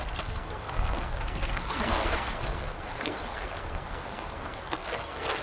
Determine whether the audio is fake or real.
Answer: fake